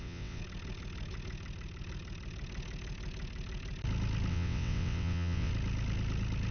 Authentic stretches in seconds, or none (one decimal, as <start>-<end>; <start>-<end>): 0.4-4.3; 5.5-6.5